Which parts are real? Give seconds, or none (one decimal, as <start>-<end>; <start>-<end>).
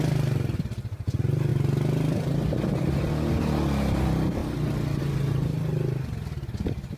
0.0-7.0